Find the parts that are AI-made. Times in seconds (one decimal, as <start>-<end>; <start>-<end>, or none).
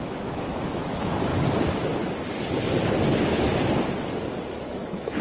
0.0-1.3; 4.4-5.2